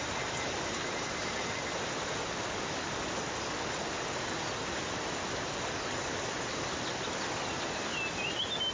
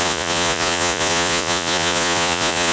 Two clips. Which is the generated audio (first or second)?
second